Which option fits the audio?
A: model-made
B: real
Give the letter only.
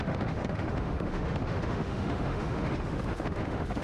A